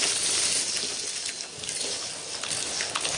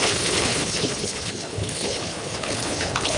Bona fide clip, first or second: first